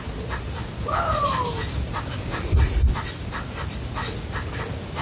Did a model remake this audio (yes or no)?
no